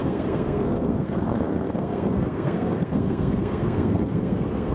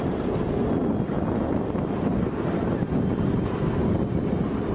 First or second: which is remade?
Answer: first